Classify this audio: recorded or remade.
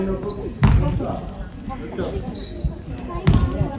recorded